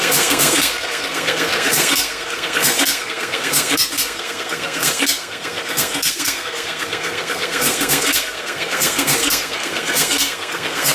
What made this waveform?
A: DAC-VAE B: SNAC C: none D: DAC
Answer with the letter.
B